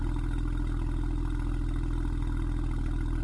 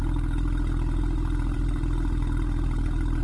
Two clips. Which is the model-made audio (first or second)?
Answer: second